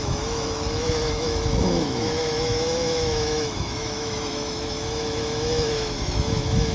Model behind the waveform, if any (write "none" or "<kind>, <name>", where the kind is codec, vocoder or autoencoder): autoencoder, DAC-VAE